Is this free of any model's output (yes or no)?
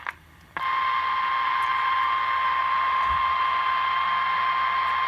yes